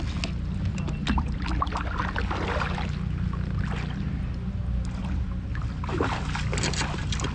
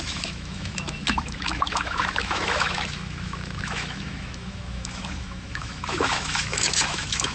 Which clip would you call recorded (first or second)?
first